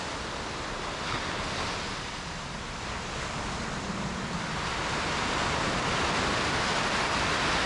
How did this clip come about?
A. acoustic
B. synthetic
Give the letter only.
A